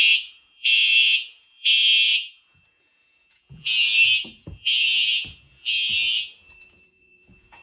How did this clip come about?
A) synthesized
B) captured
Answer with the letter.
A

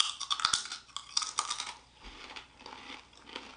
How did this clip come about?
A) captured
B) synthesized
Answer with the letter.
A